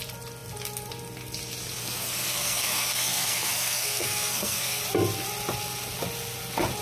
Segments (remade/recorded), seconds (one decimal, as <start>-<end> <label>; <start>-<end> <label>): 0.0-1.8 recorded; 1.8-4.8 remade; 4.8-6.8 recorded